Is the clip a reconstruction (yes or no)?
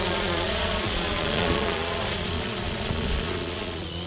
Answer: yes